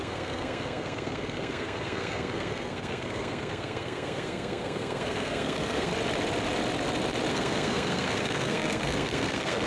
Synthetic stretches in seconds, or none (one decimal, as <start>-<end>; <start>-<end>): 0.0-5.9; 7.3-9.7